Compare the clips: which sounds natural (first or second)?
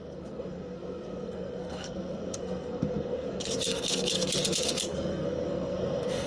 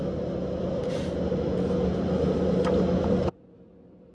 second